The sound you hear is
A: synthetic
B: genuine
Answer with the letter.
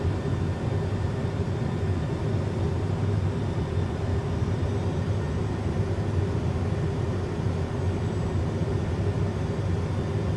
B